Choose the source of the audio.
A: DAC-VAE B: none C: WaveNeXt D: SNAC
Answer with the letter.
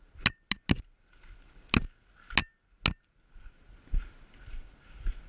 B